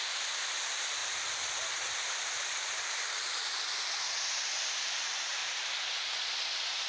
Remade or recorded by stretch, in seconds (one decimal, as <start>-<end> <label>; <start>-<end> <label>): 0.0-5.4 remade; 5.4-6.9 recorded